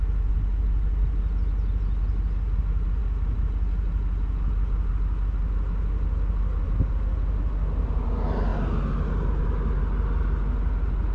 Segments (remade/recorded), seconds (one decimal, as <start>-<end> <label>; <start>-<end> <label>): 0.0-11.1 recorded